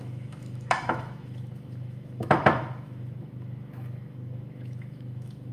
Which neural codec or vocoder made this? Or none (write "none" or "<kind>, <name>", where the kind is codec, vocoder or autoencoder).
autoencoder, DAC-VAE